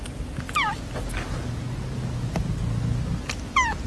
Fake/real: real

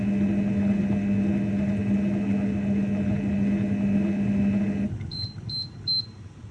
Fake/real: real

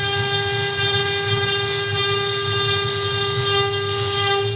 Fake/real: real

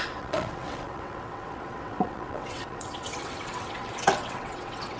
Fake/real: fake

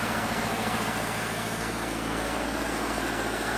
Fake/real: fake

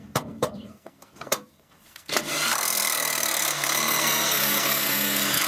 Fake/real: fake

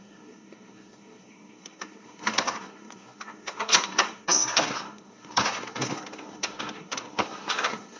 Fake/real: fake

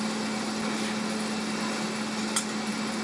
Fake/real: real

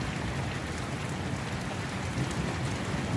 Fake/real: real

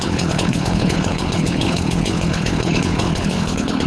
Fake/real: fake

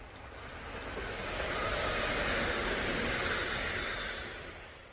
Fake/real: real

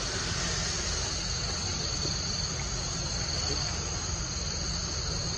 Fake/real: real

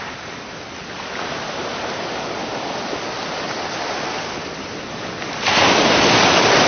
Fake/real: real